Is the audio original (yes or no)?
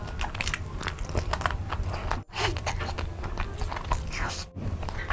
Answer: yes